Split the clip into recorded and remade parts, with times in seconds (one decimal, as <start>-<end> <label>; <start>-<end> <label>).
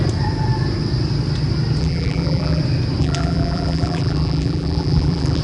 0.0-1.8 recorded; 1.8-2.6 remade; 2.6-3.0 recorded; 3.0-5.4 remade